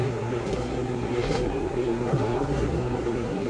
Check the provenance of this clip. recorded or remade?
remade